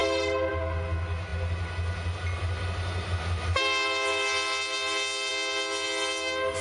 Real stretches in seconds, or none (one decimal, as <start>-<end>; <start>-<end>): 0.0-6.6